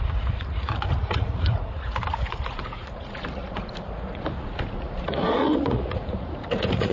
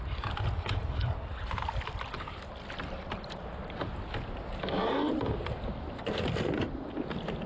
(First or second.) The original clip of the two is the second